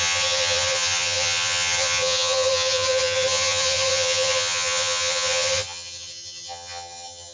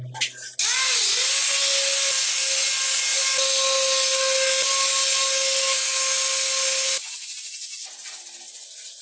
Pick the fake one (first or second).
first